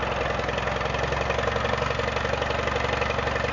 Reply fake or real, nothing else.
real